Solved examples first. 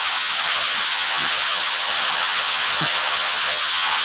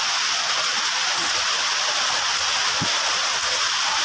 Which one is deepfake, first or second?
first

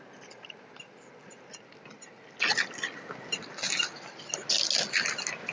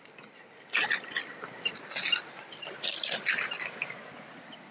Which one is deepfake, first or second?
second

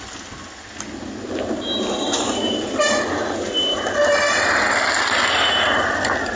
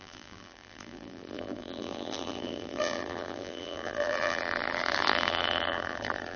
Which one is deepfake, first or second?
second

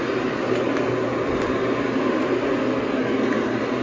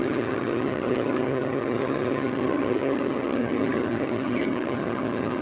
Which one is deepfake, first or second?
second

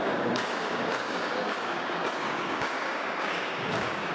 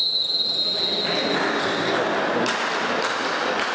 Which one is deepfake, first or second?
first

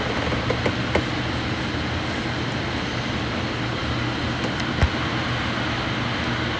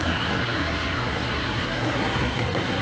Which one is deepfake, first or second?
second